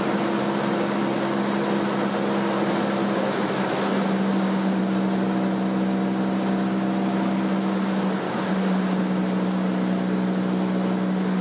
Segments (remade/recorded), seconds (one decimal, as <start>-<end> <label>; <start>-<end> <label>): 0.0-4.3 recorded; 4.3-4.8 remade; 4.8-11.4 recorded